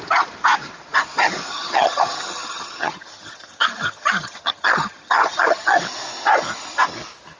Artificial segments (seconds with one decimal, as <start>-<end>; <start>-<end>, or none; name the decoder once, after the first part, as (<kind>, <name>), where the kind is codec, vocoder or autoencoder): 1.5-5.8 (vocoder, HiFi-GAN)